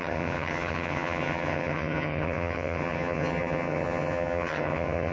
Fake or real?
fake